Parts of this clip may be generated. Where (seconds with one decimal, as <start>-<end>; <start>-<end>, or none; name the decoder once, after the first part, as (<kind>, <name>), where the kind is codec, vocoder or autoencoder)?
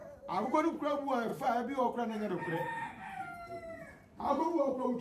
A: 0.0-0.7 (vocoder, BigVGAN v2); 1.3-2.9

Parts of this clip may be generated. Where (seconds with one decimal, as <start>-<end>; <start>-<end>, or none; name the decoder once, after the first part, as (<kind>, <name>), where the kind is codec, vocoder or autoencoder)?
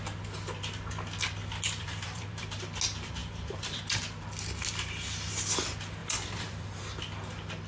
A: 1.4-2.6 (vocoder, BigVGAN v2); 3.2-3.8; 6.0-6.8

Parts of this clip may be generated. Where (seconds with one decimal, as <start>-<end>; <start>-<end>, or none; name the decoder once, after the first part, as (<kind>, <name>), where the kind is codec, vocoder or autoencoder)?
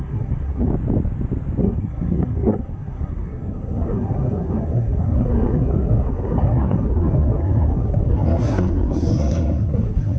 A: 0.0-0.7 (codec, SNAC); 1.6-10.2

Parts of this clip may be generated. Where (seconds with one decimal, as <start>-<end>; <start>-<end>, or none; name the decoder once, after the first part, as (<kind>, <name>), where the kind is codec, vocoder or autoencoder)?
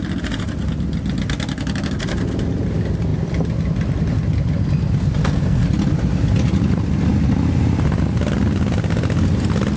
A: 5.2-5.7 (codec, SNAC)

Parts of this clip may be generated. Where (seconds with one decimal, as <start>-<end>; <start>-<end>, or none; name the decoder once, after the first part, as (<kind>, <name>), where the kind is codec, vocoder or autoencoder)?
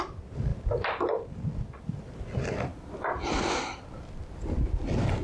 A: none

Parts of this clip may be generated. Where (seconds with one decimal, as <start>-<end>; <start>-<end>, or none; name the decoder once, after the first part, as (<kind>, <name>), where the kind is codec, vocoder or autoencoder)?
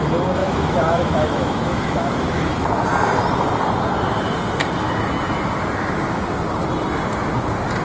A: 0.4-2.5 (autoencoder, DAC-VAE)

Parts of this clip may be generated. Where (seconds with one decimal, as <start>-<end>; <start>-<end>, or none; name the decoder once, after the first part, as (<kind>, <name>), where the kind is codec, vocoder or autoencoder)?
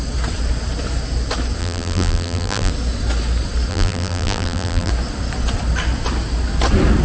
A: 1.6-2.7 (vocoder, BigVGAN v2); 3.7-4.9